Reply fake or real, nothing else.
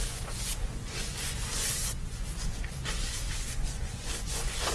fake